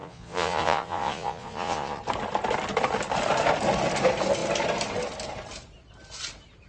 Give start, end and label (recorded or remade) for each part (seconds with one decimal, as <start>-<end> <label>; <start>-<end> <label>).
0.0-2.0 remade; 2.0-6.7 recorded

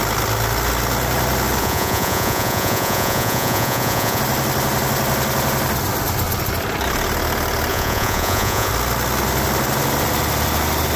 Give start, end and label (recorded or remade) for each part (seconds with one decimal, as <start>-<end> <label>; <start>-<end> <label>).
0.0-1.6 recorded; 1.6-4.2 remade; 4.2-7.7 recorded; 7.7-8.7 remade; 8.7-11.0 recorded

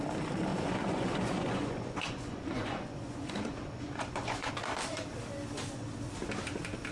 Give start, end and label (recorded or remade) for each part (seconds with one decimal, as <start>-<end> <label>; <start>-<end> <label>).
0.0-0.5 recorded; 0.5-4.5 remade; 4.5-6.9 recorded

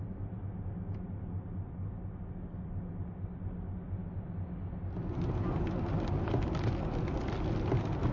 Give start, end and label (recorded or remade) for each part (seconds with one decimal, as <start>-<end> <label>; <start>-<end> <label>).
0.0-8.1 recorded

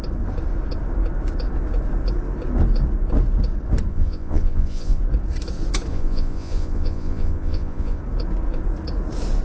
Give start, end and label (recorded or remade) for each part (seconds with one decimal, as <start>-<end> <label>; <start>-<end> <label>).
0.0-3.9 recorded; 3.9-5.0 remade; 5.0-5.9 recorded; 5.9-8.0 remade; 8.0-9.4 recorded

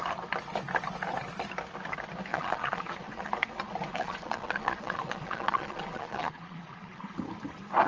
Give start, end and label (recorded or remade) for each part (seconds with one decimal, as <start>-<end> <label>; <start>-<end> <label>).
0.0-2.3 recorded; 2.3-3.3 remade; 3.3-3.9 recorded; 3.9-7.1 remade; 7.1-7.9 recorded

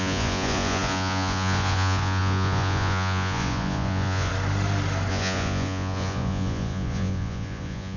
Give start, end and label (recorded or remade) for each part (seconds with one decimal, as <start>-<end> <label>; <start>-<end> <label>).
0.0-4.3 remade; 4.3-5.1 recorded; 5.1-8.0 remade

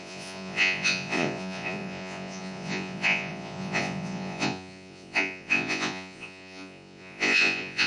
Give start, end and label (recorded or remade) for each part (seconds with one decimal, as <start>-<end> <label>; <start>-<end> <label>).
0.0-7.9 remade